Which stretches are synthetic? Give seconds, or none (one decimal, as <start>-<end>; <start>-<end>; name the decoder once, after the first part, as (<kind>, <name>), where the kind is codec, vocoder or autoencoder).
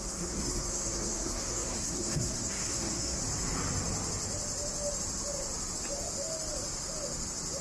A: 0.0-3.2 (codec, SNAC)